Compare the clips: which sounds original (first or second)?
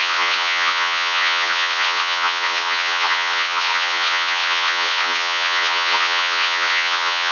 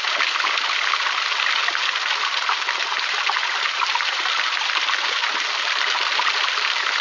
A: second